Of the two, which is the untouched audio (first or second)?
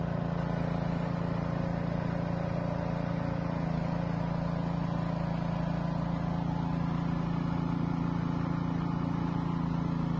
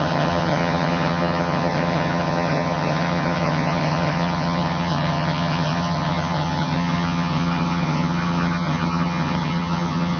first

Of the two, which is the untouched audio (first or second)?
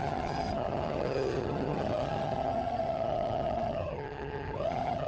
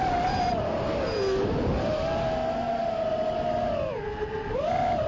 second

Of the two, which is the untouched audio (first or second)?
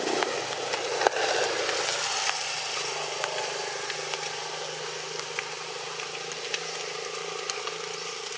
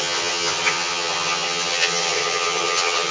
first